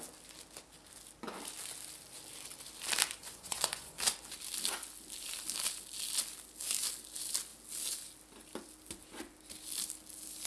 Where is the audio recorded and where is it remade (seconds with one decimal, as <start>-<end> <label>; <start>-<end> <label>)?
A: 0.0-3.2 recorded; 3.2-4.0 remade; 4.0-10.5 recorded